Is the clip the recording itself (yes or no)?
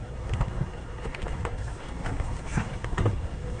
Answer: no